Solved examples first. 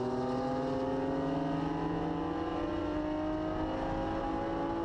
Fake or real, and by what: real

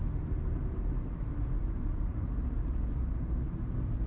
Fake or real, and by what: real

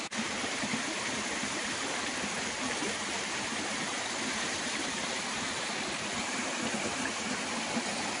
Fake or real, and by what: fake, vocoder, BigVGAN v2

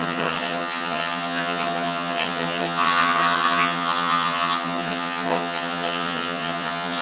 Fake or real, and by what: fake, vocoder, HiFi-GAN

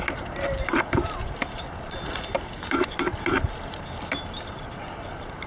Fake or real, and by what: real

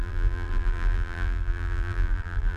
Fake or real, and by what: fake, vocoder, BigVGAN v2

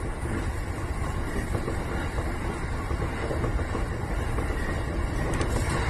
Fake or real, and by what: real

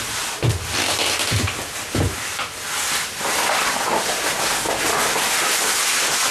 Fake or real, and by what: real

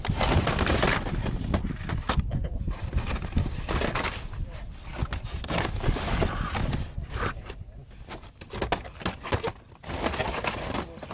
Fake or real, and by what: real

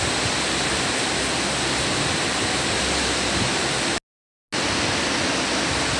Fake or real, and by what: real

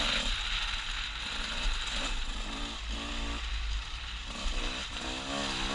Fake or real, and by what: real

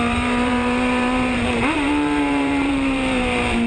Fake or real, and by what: fake, vocoder, BigVGAN v2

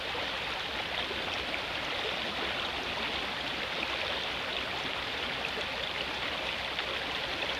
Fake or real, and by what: real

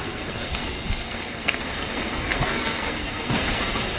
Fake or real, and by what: fake, codec, SNAC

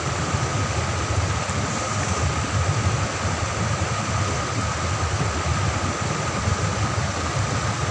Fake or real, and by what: real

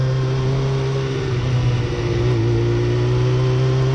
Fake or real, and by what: real